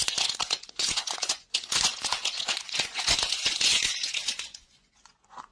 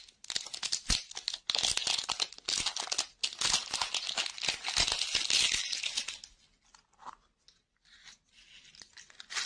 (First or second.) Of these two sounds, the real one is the second